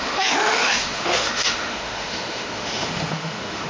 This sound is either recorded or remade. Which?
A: remade